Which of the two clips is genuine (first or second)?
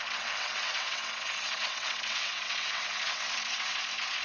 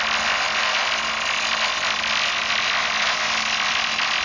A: second